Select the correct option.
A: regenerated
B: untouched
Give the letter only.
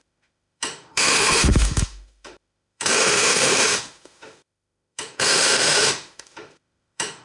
A